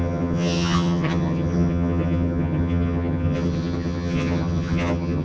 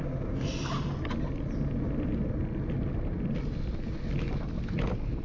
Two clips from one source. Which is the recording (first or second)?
second